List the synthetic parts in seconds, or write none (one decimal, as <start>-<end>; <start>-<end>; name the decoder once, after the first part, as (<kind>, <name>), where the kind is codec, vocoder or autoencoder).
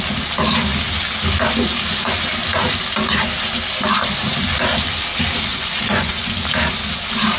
5.5-6.3 (vocoder, Vocos)